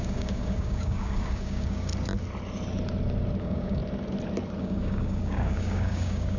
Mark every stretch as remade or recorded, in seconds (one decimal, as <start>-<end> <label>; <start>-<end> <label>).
0.0-1.9 remade; 1.9-3.4 recorded; 3.4-3.8 remade; 3.8-4.6 recorded; 4.6-6.4 remade